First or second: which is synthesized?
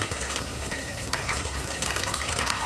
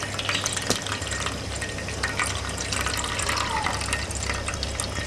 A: first